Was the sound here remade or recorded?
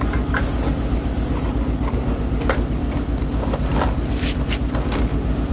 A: recorded